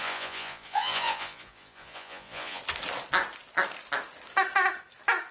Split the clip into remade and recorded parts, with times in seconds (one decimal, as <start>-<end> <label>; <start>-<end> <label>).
0.0-2.6 remade; 2.6-5.3 recorded